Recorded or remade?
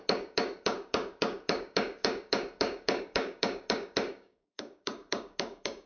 remade